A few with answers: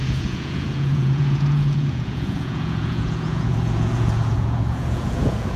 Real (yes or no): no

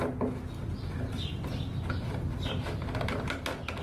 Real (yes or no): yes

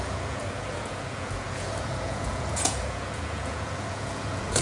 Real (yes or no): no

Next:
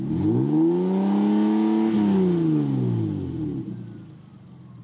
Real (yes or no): yes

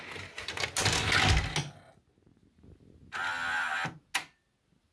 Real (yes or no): yes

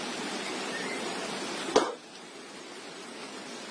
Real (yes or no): yes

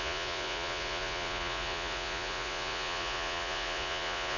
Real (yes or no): no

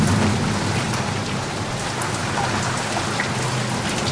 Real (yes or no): yes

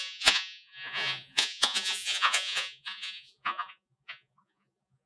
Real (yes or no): no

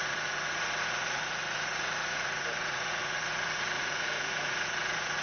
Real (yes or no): no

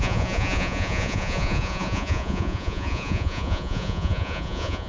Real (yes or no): no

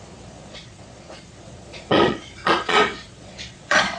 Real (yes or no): no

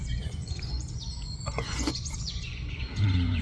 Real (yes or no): no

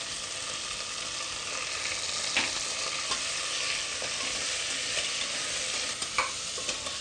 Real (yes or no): yes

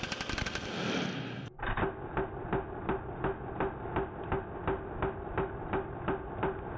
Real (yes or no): yes